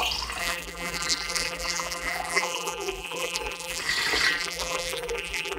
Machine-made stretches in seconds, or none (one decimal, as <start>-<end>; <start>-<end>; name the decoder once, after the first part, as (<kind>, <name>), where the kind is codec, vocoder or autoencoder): 0.4-3.8 (vocoder, BigVGAN v2); 4.3-5.6